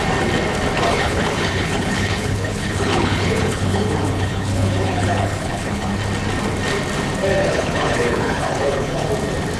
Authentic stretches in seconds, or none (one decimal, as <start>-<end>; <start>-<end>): 0.0-0.9; 5.9-7.4; 9.1-9.6